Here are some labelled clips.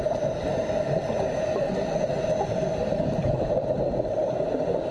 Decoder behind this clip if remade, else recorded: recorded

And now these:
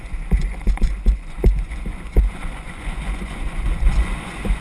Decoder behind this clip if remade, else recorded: remade, vocoder, Vocos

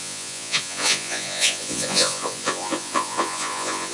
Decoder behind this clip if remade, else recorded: remade, vocoder, Vocos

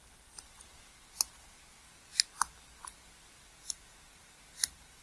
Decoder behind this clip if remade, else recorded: recorded